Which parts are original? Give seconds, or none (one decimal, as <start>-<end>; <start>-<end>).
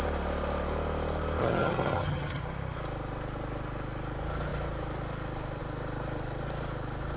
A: 0.0-1.4; 2.4-7.2